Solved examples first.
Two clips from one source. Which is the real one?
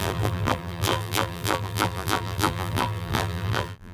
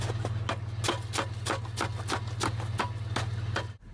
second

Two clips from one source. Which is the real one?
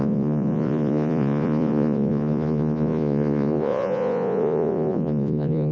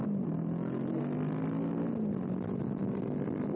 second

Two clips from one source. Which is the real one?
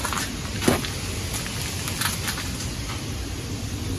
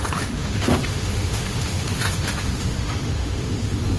first